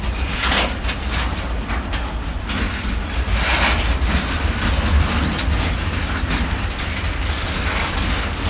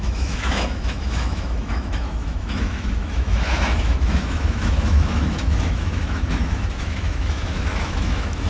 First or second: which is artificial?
second